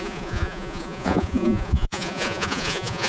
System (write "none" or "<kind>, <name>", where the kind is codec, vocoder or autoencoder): vocoder, Vocos